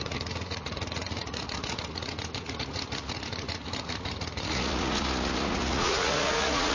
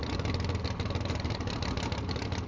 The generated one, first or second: first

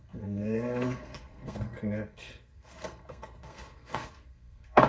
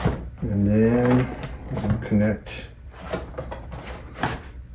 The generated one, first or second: first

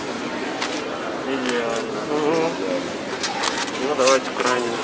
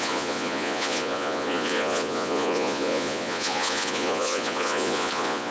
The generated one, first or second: second